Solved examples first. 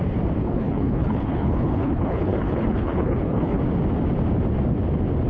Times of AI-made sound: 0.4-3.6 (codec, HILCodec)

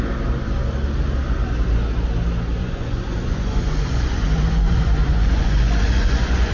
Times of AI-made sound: 2.6-6.5 (vocoder, Vocos)

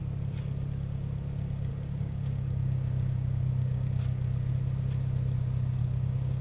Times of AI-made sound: 1.7-4.5 (codec, DAC); 5.8-6.4

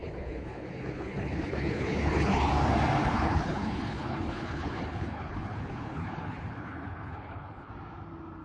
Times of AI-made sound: 0.0-2.5 (codec, HILCodec); 3.0-7.7

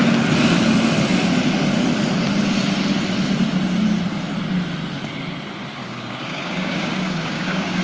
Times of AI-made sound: 5.8-7.8 (codec, DAC)